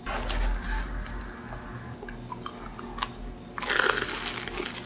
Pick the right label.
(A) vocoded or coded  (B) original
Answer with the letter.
B